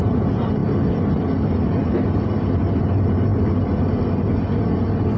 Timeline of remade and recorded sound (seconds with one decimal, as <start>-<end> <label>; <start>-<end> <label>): 0.0-5.2 recorded